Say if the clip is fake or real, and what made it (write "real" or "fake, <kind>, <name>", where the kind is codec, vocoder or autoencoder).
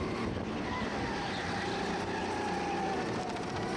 real